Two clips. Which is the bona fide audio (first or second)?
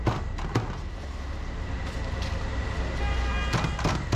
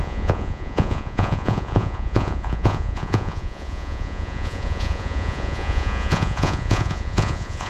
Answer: first